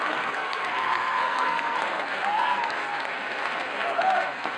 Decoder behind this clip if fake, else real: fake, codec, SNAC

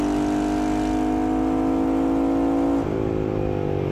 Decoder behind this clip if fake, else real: real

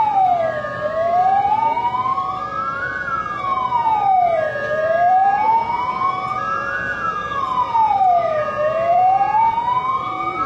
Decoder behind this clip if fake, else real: fake, vocoder, BigVGAN v2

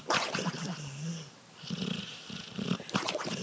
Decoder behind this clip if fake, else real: real